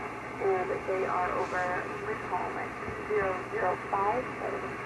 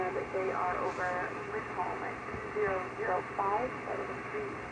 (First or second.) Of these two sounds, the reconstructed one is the second